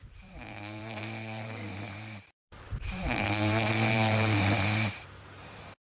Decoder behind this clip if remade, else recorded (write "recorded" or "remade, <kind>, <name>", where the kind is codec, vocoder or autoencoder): remade, vocoder, BigVGAN v2